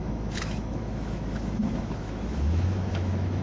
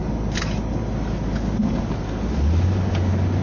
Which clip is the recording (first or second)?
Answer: second